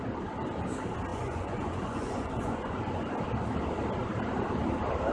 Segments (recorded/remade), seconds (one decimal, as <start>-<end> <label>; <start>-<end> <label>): 0.0-1.1 recorded; 1.1-3.1 remade; 3.1-5.1 recorded